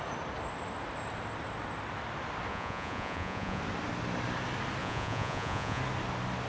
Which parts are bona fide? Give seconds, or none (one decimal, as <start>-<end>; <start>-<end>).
0.0-2.5; 3.6-4.8; 5.8-6.5